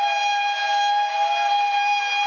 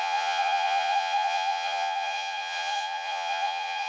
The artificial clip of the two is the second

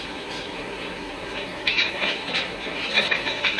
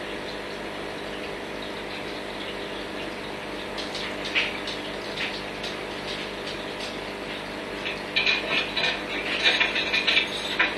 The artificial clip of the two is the first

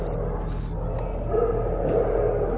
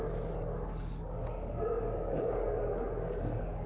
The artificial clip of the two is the second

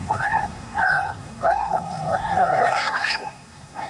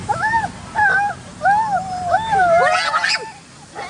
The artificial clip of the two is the first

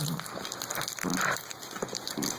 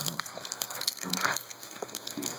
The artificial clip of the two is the second